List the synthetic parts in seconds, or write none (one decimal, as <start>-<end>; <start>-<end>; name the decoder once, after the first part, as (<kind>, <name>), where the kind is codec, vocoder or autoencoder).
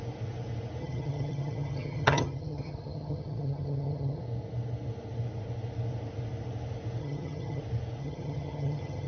0.8-4.2 (vocoder, HiFi-GAN); 7.0-7.6; 8.0-9.1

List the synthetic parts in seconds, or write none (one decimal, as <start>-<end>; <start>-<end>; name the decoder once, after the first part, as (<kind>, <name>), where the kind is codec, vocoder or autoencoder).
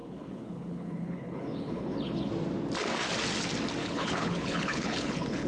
0.0-2.3 (codec, HILCodec); 3.8-5.5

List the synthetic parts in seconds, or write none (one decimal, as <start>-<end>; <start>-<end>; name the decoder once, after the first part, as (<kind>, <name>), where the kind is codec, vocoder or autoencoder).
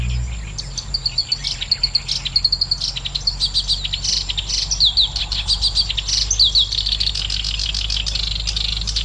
none